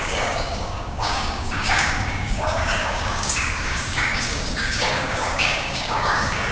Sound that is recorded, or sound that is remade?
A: remade